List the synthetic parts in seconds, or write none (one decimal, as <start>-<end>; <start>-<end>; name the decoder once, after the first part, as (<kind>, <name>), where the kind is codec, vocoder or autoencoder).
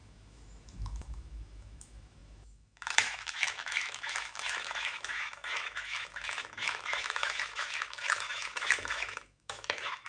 0.0-10.1 (autoencoder, DAC-VAE)